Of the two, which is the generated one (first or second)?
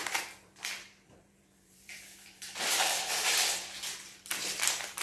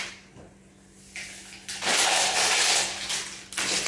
first